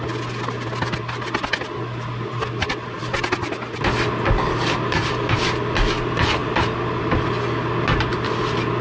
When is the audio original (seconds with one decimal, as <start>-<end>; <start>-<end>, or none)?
0.0-8.8